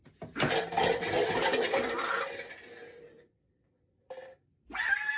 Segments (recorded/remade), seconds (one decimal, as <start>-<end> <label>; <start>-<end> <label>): 0.0-1.5 recorded; 1.5-2.1 remade; 2.1-5.2 recorded